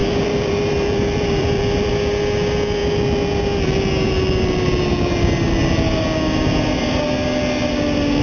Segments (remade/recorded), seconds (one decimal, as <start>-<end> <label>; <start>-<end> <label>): 0.0-1.9 remade; 1.9-8.2 recorded